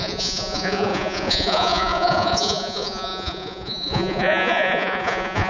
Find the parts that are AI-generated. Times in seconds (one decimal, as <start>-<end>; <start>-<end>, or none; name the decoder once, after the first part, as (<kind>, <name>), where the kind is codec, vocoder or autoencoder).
0.0-5.5 (vocoder, Vocos)